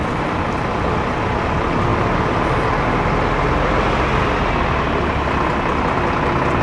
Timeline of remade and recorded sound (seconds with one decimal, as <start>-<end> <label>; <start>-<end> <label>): 0.0-6.6 recorded